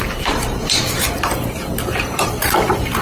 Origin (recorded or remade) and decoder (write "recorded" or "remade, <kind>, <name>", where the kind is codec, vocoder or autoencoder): recorded